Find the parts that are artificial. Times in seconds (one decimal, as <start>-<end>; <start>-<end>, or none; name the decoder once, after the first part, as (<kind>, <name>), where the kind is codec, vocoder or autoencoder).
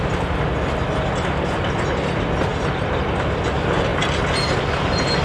none